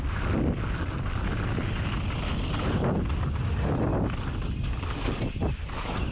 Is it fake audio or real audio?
real